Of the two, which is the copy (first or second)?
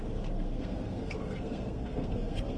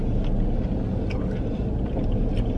first